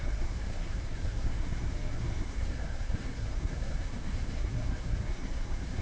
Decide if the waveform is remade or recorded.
remade